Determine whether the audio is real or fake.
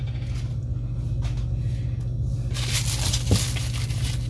real